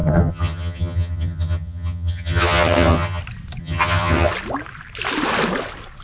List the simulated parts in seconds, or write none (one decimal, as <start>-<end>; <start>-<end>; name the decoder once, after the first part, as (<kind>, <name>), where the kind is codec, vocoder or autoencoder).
0.0-3.2 (vocoder, HiFi-GAN); 3.6-4.3